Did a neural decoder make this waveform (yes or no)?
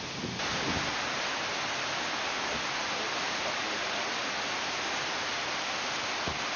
no